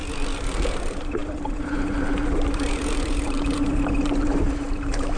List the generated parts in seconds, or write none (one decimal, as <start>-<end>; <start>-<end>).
1.2-4.3